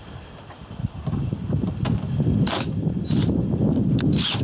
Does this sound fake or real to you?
fake